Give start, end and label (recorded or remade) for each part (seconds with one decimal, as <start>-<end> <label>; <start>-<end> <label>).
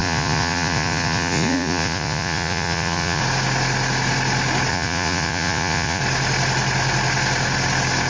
0.0-3.2 remade; 3.2-4.7 recorded; 4.7-6.0 remade; 6.0-8.1 recorded